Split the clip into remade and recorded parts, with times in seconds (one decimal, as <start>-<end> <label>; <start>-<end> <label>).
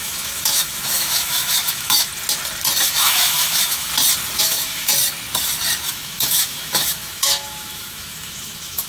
0.0-2.1 remade; 2.1-2.8 recorded; 2.8-3.9 remade; 3.9-4.4 recorded; 4.4-4.9 remade; 4.9-5.9 recorded; 5.9-8.9 remade